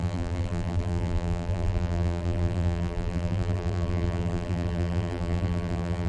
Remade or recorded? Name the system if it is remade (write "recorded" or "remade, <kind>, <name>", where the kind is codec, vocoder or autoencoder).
remade, vocoder, BigVGAN v2